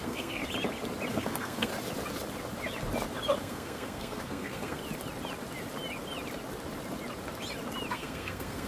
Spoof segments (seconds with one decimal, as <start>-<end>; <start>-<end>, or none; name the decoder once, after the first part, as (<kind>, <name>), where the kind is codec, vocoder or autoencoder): 0.0-0.4 (codec, SNAC); 1.1-1.7; 3.4-4.8; 7.9-8.7